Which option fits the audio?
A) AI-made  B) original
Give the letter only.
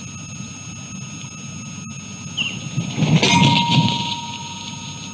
B